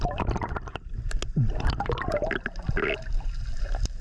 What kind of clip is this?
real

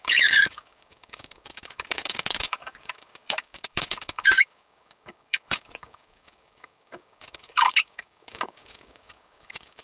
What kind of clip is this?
fake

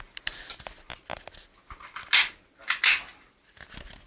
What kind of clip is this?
real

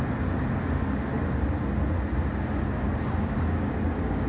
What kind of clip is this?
real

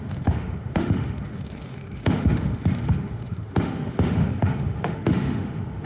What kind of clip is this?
fake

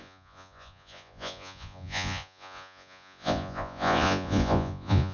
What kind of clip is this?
fake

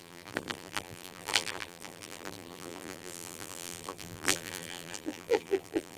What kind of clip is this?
fake